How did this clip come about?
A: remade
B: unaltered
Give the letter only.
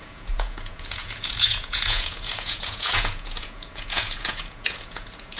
A